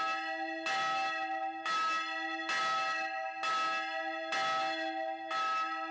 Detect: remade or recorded recorded